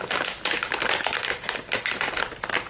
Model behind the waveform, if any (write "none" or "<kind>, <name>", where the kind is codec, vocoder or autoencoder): none